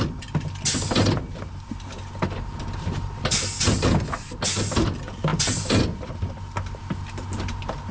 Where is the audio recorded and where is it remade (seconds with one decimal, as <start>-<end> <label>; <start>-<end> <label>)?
0.0-7.9 recorded